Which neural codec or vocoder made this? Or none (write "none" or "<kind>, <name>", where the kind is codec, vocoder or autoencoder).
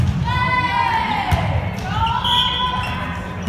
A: none